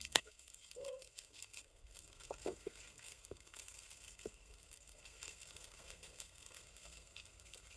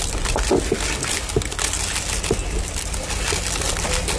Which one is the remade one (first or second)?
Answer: first